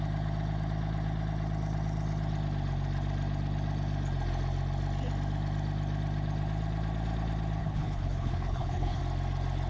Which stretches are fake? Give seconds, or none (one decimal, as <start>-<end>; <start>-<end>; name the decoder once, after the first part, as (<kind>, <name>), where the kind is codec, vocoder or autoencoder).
7.6-9.0 (codec, HILCodec)